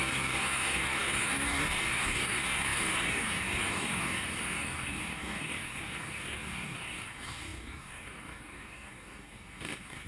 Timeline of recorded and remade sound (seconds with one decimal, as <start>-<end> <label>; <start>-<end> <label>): 0.0-10.1 remade